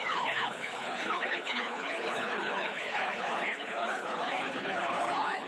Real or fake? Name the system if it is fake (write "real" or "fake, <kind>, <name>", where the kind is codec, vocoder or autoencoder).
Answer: fake, codec, HILCodec